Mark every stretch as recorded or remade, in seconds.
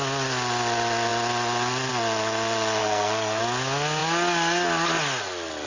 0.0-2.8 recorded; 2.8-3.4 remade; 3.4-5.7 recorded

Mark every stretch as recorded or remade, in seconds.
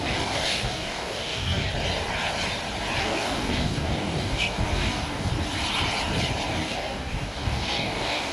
0.0-1.7 remade; 1.7-3.0 recorded; 3.0-5.3 remade; 5.3-6.5 recorded; 6.5-8.3 remade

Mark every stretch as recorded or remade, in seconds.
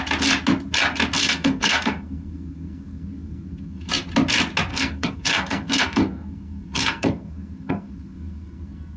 0.0-1.2 recorded; 1.2-3.9 remade; 3.9-4.7 recorded; 4.7-9.0 remade